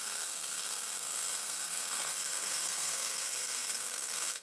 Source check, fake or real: fake